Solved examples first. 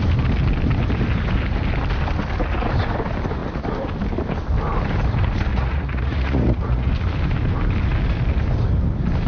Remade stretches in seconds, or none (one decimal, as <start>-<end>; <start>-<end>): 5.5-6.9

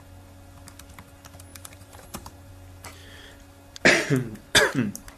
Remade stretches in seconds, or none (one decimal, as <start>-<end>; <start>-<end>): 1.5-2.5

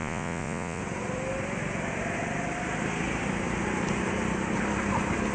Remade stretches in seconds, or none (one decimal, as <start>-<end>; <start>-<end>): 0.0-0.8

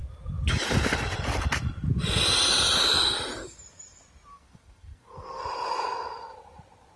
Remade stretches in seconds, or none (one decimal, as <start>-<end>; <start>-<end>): 4.3-5.4

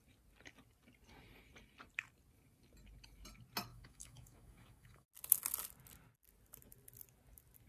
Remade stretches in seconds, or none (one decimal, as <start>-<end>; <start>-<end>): 3.7-5.1

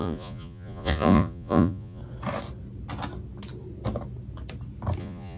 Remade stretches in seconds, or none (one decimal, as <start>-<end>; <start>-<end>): 0.0-2.0; 5.0-5.4

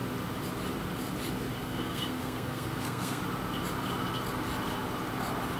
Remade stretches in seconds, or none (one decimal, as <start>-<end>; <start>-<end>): 1.6-3.2

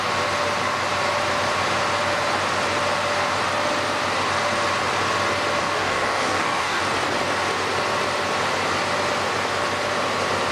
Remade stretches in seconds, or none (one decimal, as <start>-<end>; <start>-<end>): 5.6-6.8